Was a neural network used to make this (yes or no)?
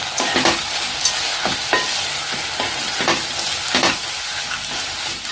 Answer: no